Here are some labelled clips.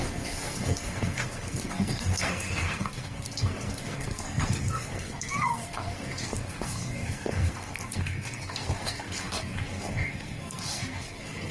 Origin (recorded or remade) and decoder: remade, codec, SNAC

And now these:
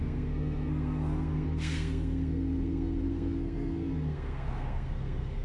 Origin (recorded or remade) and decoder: remade, codec, SNAC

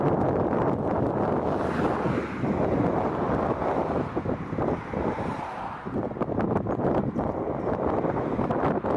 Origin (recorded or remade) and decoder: recorded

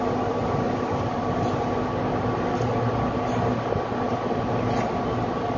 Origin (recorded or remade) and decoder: recorded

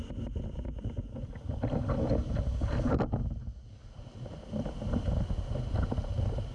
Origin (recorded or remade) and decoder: recorded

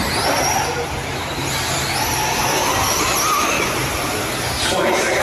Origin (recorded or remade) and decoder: recorded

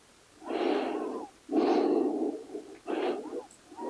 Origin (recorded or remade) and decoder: recorded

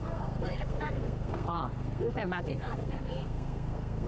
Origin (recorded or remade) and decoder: remade, codec, SNAC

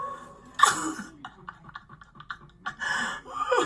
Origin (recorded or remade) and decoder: recorded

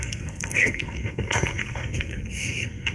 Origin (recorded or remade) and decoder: remade, codec, SNAC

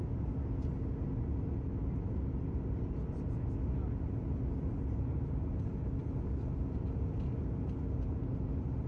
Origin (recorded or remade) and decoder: recorded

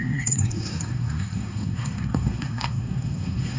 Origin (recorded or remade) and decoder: remade, codec, SNAC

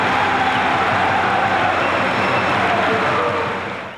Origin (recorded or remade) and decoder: recorded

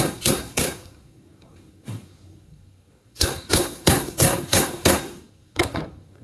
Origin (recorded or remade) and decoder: remade, codec, SNAC